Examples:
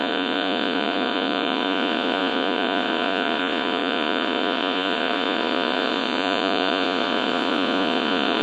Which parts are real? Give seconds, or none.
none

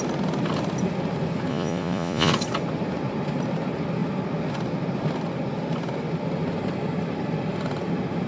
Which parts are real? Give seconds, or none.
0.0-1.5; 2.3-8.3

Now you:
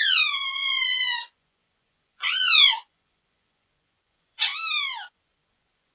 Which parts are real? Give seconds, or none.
4.5-5.1

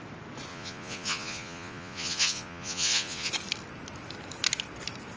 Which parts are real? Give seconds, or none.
0.0-0.5; 3.3-5.2